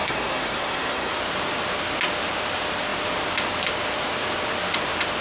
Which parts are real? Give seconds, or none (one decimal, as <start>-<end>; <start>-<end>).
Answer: 1.1-5.2